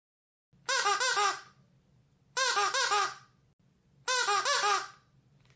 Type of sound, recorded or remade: recorded